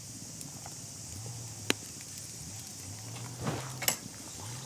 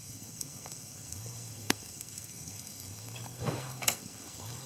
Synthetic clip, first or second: second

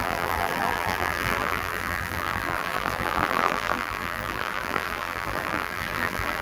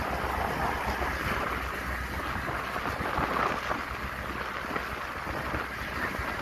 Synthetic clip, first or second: first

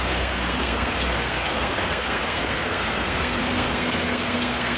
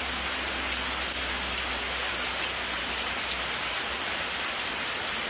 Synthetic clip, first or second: first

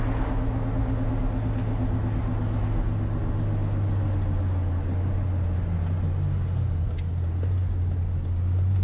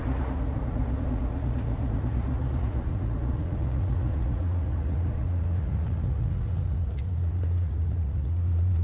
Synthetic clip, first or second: second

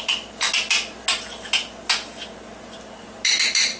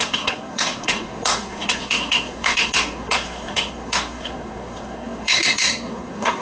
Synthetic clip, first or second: second